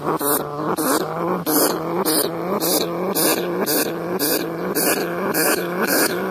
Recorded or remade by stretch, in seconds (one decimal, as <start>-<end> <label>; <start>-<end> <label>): 0.0-5.0 recorded; 5.0-6.3 remade